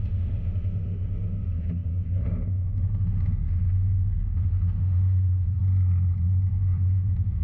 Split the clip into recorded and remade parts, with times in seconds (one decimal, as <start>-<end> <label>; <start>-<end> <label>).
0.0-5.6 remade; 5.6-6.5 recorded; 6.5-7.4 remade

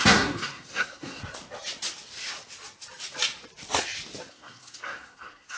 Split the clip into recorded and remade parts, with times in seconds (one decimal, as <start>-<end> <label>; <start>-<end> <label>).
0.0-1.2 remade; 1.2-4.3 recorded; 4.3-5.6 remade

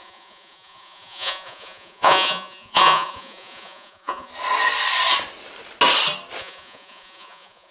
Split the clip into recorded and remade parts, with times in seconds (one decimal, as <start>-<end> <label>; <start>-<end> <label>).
0.0-4.3 remade; 4.3-6.4 recorded; 6.4-7.7 remade